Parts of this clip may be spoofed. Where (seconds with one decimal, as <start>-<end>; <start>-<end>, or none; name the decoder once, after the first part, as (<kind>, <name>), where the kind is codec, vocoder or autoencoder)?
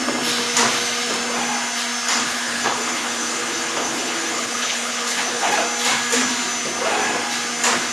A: 2.2-5.5 (codec, HILCodec)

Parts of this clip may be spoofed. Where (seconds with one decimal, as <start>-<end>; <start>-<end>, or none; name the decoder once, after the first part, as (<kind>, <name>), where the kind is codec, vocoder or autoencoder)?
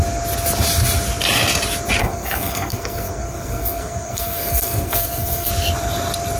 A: 2.0-5.5 (codec, SNAC)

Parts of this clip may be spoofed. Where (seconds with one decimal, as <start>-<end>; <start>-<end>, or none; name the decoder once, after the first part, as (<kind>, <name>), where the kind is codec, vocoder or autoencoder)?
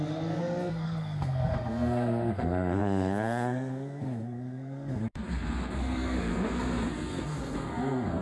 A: 0.0-8.2 (codec, SNAC)